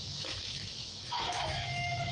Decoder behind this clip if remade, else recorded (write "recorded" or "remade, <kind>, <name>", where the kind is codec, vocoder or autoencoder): remade, autoencoder, DAC-VAE